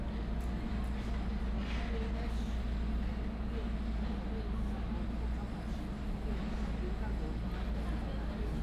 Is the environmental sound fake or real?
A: real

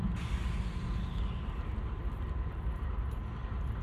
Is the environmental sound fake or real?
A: real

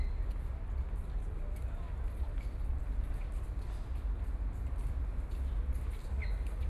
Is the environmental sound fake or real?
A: real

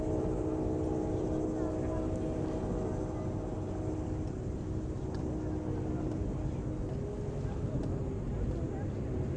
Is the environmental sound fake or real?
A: real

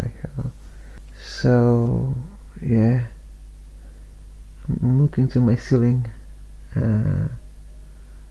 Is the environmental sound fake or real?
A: real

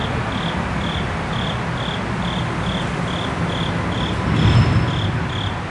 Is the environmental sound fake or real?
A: real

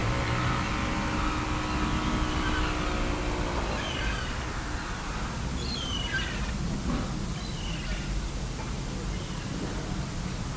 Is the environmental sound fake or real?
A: real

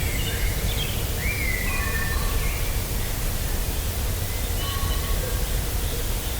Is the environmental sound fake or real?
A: real